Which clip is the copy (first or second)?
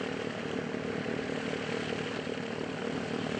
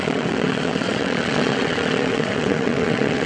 second